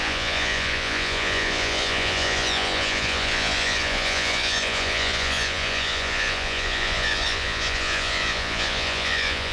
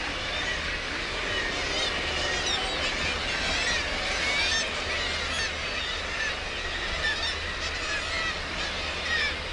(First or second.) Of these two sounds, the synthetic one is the first